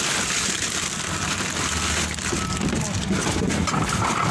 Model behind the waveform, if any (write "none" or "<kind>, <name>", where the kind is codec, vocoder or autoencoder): none